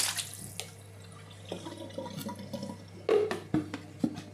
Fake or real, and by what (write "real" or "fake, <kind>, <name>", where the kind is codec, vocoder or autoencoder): real